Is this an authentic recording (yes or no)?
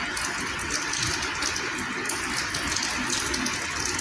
yes